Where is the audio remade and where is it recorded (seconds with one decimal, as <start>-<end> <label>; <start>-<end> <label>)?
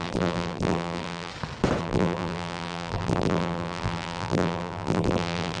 0.0-1.3 remade; 1.3-1.8 recorded; 1.8-5.6 remade